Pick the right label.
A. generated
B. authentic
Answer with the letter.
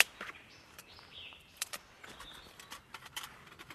A